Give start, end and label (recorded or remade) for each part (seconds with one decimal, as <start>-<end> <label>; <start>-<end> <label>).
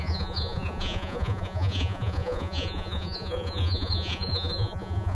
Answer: 0.0-5.1 remade